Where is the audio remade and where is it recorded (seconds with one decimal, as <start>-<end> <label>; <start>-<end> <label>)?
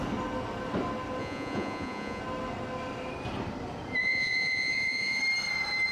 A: 0.0-1.2 recorded; 1.2-2.2 remade; 2.2-4.0 recorded; 4.0-5.2 remade; 5.2-5.9 recorded